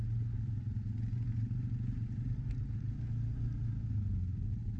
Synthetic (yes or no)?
no